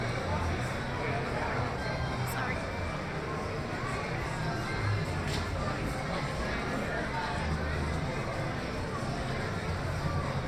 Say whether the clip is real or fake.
real